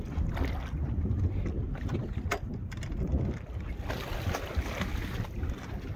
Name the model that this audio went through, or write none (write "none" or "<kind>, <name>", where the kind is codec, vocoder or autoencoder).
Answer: none